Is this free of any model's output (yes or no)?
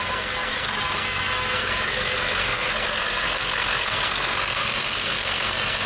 no